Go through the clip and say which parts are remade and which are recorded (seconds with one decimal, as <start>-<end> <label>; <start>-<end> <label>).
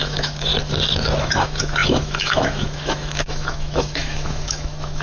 0.0-0.5 remade; 0.5-1.2 recorded; 1.2-5.0 remade